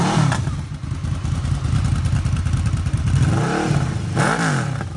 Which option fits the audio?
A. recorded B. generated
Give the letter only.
A